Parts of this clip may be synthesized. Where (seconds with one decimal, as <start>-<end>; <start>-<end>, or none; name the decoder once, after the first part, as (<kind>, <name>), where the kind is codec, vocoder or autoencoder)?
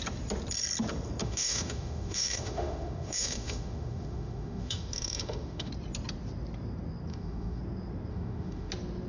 1.2-5.7 (autoencoder, DAC-VAE); 7.1-7.6; 8.1-8.7